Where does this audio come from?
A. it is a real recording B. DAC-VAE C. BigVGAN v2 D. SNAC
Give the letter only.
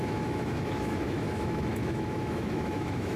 B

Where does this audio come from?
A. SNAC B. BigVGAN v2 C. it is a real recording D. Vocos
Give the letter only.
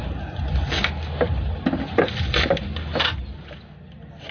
C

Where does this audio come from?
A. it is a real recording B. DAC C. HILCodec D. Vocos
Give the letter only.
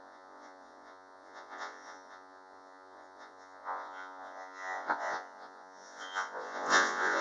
D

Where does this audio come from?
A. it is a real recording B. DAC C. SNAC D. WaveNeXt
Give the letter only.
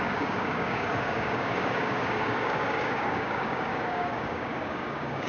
B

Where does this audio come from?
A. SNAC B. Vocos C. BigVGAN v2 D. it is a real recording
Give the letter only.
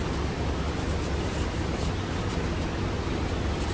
D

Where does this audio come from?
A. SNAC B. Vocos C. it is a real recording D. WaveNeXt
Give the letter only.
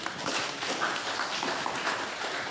C